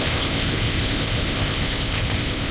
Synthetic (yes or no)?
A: yes